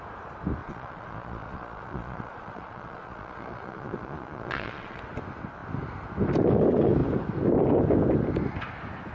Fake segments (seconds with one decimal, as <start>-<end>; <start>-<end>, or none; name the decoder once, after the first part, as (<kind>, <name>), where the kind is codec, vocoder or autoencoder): 0.6-5.0 (vocoder, Vocos)